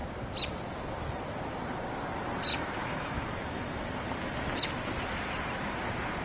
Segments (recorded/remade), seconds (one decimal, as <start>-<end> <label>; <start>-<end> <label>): 0.0-2.5 recorded; 2.5-3.8 remade; 3.8-6.2 recorded